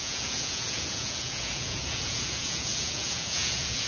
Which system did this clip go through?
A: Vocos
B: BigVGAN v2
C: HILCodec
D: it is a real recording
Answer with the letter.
A